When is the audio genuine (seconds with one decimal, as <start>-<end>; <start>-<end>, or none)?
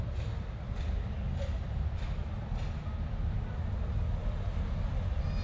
0.0-5.4